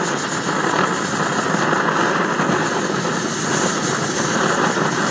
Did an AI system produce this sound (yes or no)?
no